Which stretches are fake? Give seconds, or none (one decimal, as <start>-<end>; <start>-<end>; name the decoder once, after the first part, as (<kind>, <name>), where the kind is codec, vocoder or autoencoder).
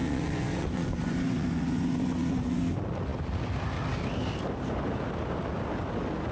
0.0-2.6 (vocoder, Vocos)